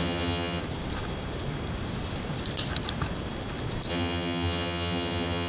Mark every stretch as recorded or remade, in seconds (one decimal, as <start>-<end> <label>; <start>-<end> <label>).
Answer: 0.0-0.6 remade; 0.6-3.9 recorded; 3.9-5.5 remade